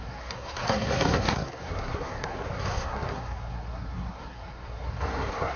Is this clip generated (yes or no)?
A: yes